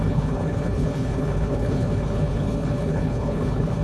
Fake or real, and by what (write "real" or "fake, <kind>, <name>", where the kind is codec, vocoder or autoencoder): fake, codec, HILCodec